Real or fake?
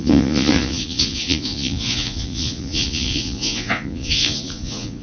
fake